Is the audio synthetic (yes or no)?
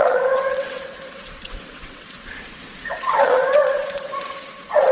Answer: yes